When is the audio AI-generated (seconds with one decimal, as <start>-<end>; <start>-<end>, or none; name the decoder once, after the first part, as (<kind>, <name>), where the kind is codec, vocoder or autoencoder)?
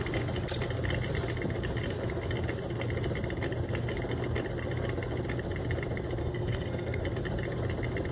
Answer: 6.2-7.0 (codec, SNAC)